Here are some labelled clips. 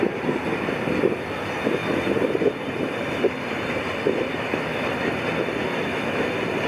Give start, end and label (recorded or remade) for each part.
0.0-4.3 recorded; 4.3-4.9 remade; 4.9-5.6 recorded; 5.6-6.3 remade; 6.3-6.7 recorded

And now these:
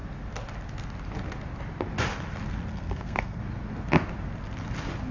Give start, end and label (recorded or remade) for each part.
0.0-2.7 recorded; 2.7-3.4 remade; 3.4-5.1 recorded

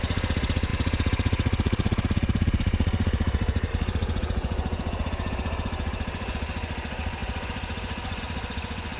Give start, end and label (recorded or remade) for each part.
0.0-9.0 remade

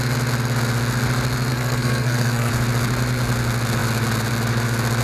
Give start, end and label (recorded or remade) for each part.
0.0-1.5 recorded; 1.5-2.5 remade; 2.5-5.0 recorded

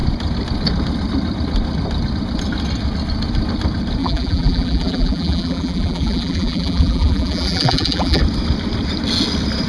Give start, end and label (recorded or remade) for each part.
0.0-4.0 recorded; 4.0-8.2 remade; 8.2-9.7 recorded

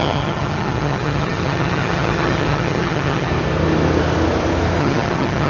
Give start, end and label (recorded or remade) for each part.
0.0-3.3 remade; 3.3-4.8 recorded; 4.8-5.5 remade

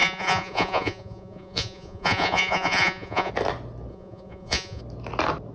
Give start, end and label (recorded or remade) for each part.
0.0-3.3 remade; 3.3-3.9 recorded; 3.9-4.8 remade; 4.8-5.5 recorded

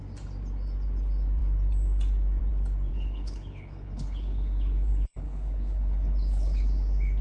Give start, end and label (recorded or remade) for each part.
0.0-2.9 recorded; 2.9-7.2 remade